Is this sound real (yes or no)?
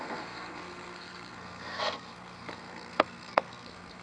no